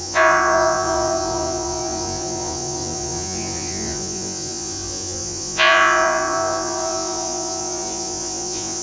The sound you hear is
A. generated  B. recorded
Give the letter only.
A